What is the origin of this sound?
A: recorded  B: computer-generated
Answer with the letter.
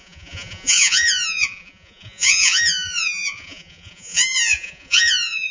B